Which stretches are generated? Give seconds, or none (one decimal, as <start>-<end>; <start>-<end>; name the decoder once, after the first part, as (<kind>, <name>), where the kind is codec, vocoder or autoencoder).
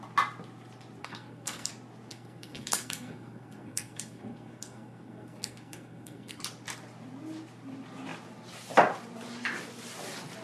1.0-1.7 (codec, SNAC); 2.1-6.4